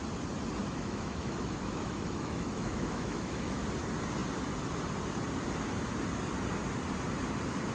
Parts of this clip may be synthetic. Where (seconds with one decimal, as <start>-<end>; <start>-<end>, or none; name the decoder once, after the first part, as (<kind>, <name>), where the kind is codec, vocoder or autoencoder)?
0.6-3.6 (autoencoder, DAC-VAE)